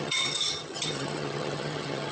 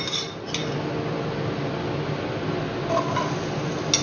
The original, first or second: second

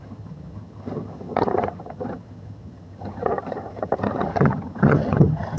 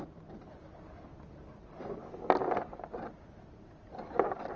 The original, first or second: second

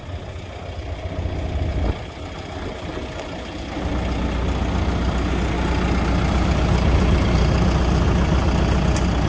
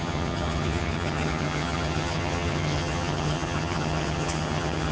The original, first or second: first